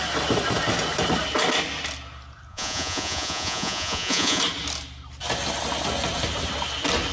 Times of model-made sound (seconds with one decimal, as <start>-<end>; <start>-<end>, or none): 2.5-4.4